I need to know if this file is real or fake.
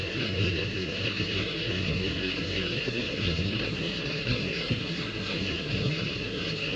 fake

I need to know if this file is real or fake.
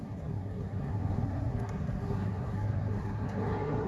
fake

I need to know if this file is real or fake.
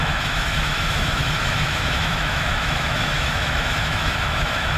fake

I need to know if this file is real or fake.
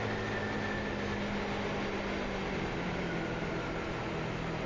real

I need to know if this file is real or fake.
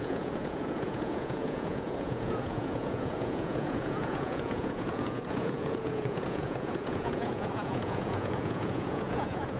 fake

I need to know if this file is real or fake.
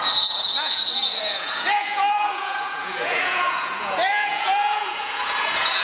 fake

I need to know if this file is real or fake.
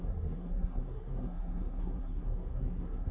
fake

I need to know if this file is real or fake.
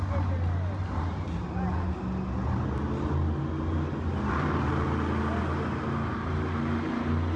real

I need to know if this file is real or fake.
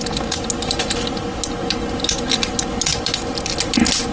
real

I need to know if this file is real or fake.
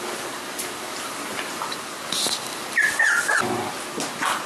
real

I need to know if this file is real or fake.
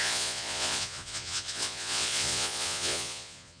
fake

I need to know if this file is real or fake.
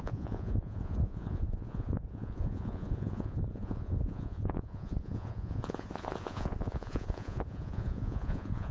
fake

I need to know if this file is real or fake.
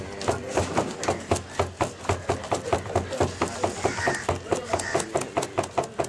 real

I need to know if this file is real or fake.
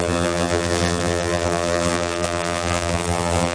fake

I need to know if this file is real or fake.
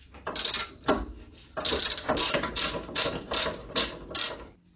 real